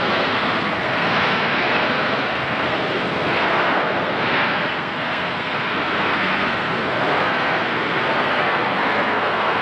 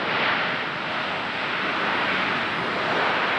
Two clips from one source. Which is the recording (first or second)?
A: second